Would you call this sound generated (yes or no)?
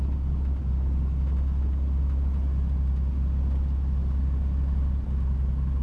no